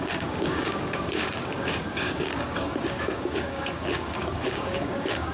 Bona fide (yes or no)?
no